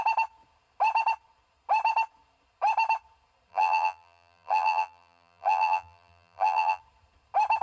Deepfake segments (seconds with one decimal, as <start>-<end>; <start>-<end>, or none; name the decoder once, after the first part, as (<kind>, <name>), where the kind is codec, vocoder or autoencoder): 3.5-6.8 (vocoder, BigVGAN v2)